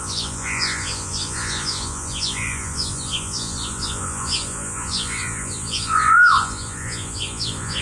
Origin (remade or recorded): remade